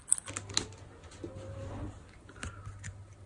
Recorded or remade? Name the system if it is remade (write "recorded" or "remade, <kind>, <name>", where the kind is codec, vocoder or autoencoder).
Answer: recorded